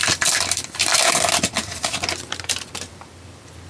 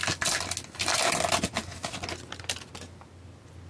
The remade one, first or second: first